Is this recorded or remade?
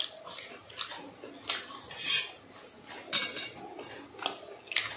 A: recorded